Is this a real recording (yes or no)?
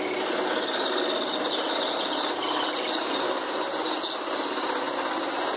yes